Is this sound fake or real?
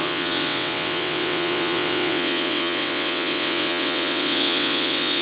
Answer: fake